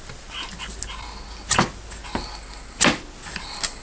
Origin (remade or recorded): recorded